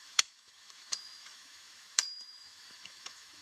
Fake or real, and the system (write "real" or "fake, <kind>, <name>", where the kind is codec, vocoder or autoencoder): fake, autoencoder, DAC-VAE